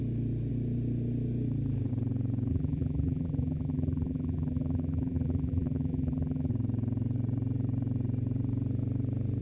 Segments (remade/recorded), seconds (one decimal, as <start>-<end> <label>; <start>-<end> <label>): 0.0-2.5 recorded; 2.5-6.5 remade; 6.5-9.4 recorded